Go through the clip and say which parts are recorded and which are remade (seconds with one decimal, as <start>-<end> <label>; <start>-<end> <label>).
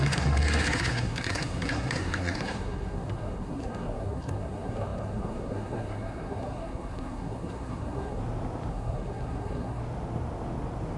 0.0-8.2 remade; 8.2-8.7 recorded; 8.7-9.8 remade; 9.8-11.0 recorded